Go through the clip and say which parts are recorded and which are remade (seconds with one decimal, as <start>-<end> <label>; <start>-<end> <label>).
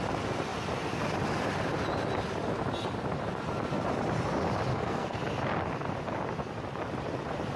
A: 0.0-4.7 recorded; 4.7-5.2 remade; 5.2-7.6 recorded